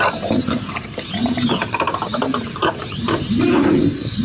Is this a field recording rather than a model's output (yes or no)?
no